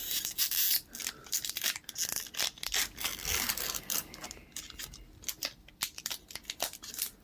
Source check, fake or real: real